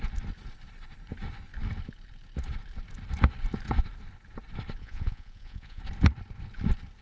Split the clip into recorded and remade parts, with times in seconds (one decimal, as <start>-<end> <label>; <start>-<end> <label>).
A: 0.0-4.8 recorded; 4.8-5.8 remade; 5.8-7.0 recorded